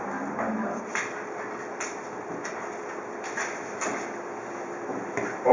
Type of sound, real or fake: real